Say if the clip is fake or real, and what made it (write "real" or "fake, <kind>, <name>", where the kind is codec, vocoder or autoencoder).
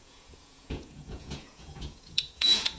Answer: fake, vocoder, Vocos